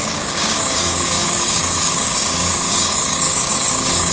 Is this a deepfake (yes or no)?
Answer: yes